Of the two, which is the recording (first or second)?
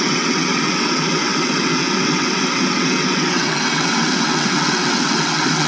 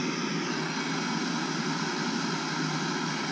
second